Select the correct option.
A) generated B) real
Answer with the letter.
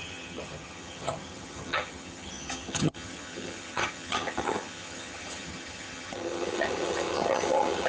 A